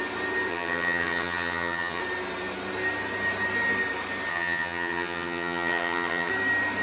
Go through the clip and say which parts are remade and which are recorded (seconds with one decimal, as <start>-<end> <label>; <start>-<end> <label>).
0.0-0.5 recorded; 0.5-2.0 remade; 2.0-4.3 recorded; 4.3-6.3 remade; 6.3-6.8 recorded